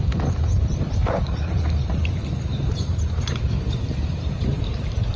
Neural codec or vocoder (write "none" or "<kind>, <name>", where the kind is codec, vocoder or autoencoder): vocoder, BigVGAN v2